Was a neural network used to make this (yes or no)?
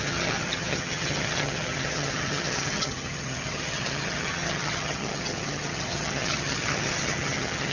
yes